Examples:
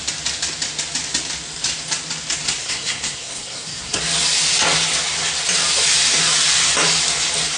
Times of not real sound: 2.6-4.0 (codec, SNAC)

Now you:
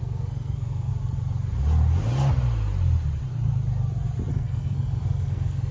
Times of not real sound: 0.0-0.9 (codec, SNAC); 4.3-5.7

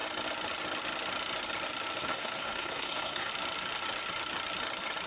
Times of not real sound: 2.0-3.3 (codec, SNAC)

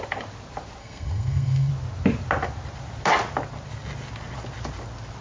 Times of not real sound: 0.8-1.7 (codec, SNAC)

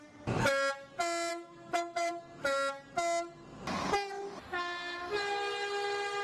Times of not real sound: 1.3-2.1 (codec, SNAC)

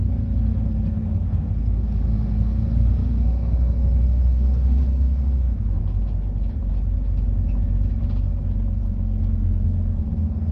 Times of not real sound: 0.0-5.8 (codec, SNAC); 8.8-10.5